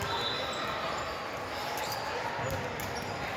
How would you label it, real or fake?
real